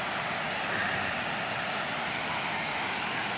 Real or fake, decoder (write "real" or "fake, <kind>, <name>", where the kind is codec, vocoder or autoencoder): real